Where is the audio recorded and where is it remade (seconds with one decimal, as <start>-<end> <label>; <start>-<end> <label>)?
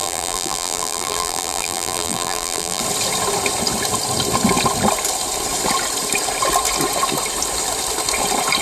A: 0.0-2.8 remade; 2.8-8.6 recorded